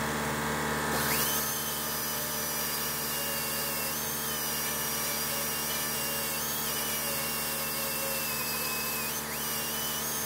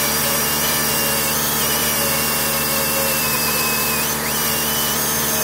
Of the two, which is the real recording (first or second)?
first